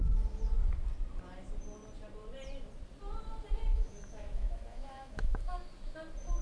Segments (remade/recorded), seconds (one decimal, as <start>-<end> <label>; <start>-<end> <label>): 0.0-3.7 recorded; 3.7-5.4 remade; 5.4-6.4 recorded